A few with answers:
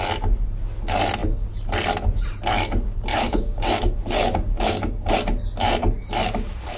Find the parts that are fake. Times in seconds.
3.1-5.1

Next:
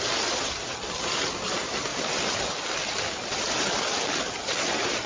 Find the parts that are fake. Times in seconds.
none

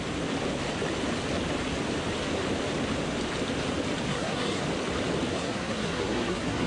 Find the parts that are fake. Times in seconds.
4.1-4.6; 5.3-6.7

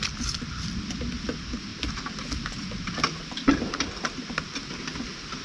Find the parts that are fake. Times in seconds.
none

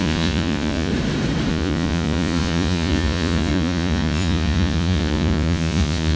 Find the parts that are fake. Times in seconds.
0.0-0.9; 1.5-6.2

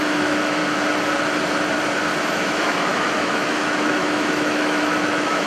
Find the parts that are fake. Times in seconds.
0.0-0.6; 2.2-5.5